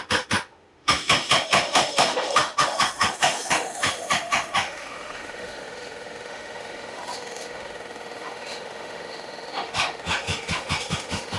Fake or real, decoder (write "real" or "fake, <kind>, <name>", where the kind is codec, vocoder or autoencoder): fake, autoencoder, DAC-VAE